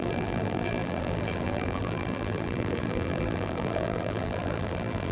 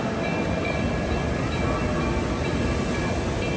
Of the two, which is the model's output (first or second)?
first